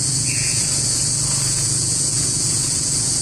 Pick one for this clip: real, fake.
fake